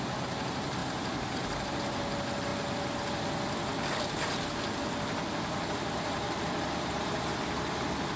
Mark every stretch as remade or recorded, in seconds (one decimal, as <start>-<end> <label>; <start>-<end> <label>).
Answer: 0.0-0.8 recorded; 0.8-1.7 remade; 1.7-8.2 recorded